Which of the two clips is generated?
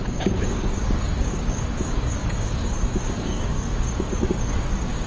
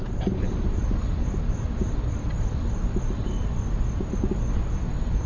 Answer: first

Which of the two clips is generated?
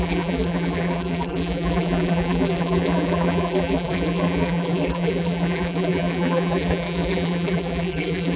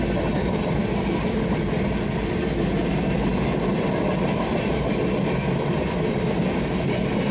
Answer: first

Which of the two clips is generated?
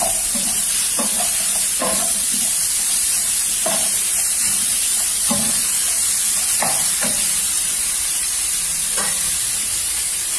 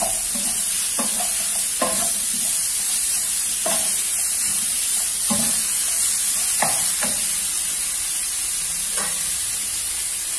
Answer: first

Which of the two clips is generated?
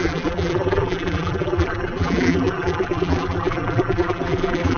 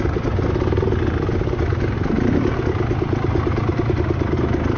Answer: first